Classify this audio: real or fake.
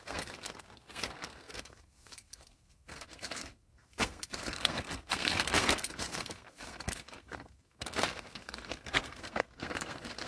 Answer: fake